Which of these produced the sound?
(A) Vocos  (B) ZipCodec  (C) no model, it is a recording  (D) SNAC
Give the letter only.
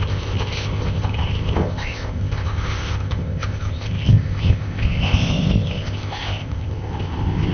B